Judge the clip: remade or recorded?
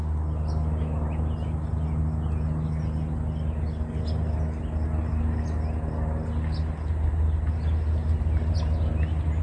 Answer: recorded